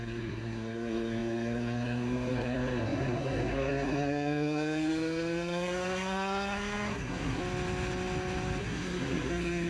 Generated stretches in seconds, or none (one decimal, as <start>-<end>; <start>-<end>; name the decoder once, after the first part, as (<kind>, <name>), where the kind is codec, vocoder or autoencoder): 0.0-7.4 (codec, SNAC); 8.6-9.7

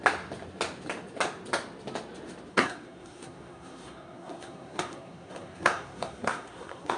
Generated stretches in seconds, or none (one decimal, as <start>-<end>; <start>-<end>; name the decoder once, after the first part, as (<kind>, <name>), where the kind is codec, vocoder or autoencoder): 2.5-7.0 (codec, SNAC)